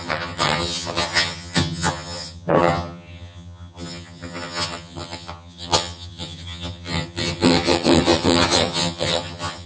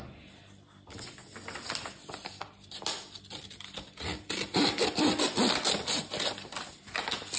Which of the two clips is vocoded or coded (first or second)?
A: first